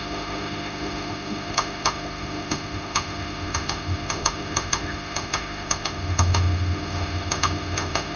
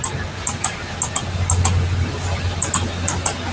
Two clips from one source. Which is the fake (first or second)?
first